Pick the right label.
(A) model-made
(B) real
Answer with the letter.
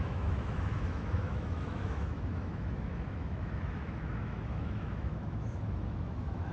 A